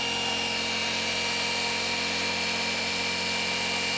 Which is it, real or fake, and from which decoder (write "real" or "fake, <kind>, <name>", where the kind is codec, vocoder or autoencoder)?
real